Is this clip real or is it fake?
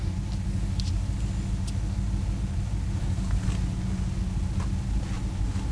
real